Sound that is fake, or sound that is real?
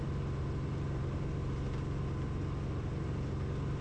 real